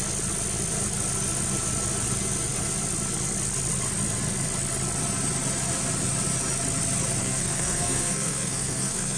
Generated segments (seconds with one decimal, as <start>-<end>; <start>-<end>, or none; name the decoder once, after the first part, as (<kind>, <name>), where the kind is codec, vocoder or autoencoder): 7.2-9.2 (codec, SNAC)